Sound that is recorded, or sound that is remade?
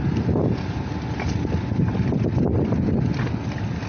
recorded